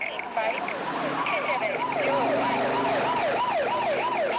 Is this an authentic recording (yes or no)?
yes